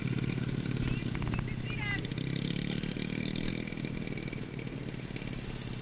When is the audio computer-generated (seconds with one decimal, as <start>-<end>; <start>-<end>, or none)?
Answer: 2.1-3.5